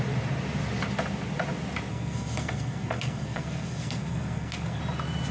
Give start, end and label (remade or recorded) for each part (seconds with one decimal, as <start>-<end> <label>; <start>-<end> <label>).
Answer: 0.0-1.9 recorded; 1.9-4.8 remade; 4.8-5.3 recorded